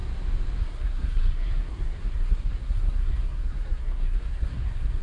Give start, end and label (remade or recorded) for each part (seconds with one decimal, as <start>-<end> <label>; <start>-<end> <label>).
0.0-0.6 recorded; 0.6-5.0 remade